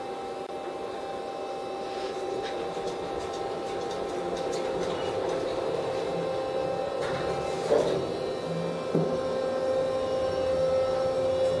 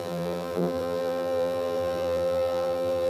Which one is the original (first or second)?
first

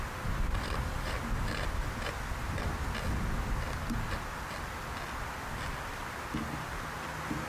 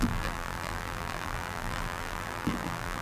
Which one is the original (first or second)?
first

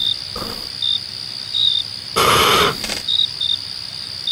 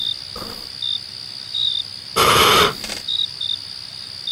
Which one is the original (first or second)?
second